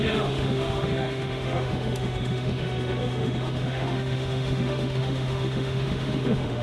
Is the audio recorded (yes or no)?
no